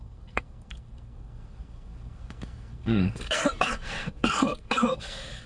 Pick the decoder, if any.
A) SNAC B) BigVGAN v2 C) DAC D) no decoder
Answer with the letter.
A